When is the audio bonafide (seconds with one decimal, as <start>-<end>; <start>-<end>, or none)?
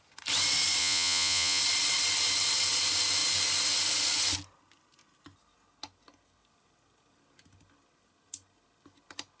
0.0-0.8; 1.6-9.4